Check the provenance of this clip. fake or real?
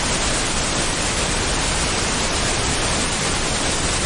real